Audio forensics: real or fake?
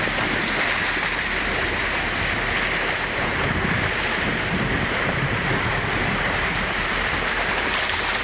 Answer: real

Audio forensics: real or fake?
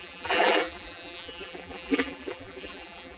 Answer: fake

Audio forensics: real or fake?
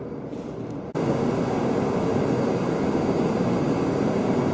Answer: real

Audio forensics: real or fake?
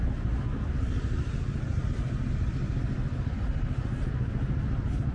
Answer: real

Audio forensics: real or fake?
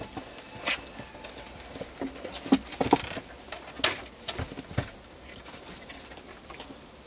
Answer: real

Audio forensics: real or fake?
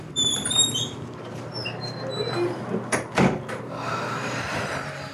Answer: fake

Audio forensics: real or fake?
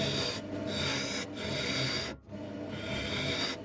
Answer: real